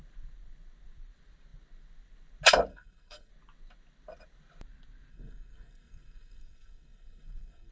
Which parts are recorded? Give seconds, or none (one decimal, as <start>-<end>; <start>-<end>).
0.0-2.7; 3.3-5.1